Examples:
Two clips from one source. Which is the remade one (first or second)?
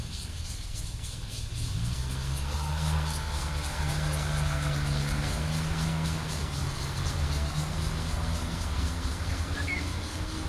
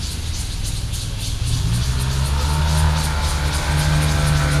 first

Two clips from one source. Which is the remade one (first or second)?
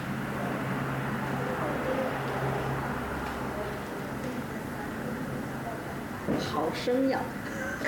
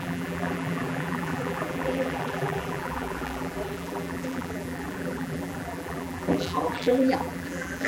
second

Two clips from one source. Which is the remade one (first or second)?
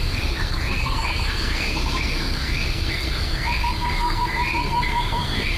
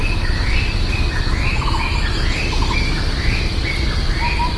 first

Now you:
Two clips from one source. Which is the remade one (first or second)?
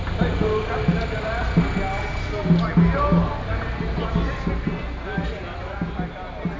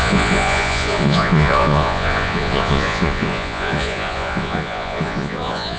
second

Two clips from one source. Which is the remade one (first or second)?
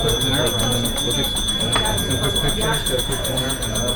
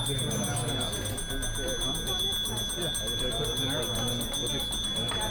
first